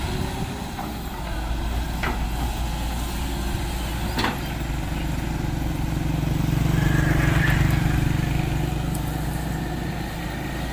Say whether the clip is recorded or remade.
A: recorded